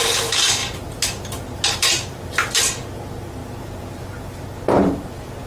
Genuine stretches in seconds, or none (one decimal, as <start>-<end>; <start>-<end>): 0.0-0.6; 2.6-3.4; 5.1-5.5